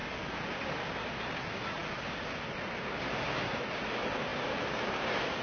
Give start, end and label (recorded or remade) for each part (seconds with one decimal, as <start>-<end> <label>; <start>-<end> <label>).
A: 0.0-5.4 recorded